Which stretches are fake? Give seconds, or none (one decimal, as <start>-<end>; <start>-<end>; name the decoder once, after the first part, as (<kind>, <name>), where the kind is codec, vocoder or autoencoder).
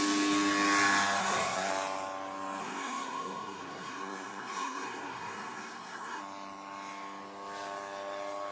1.2-1.7 (codec, SNAC); 2.6-6.2